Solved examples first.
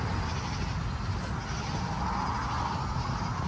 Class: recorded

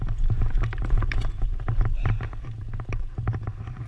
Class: remade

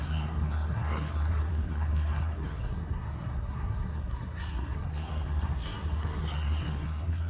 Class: remade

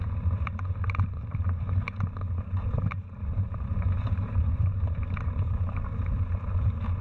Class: remade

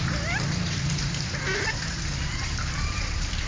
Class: remade